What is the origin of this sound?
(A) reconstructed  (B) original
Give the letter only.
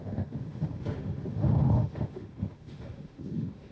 A